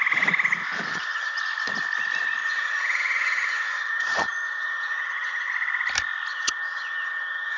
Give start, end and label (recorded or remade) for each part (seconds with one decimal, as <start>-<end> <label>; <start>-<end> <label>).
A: 0.0-0.9 recorded; 0.9-1.4 remade; 1.4-2.4 recorded; 2.4-5.5 remade; 5.5-6.3 recorded; 6.3-7.6 remade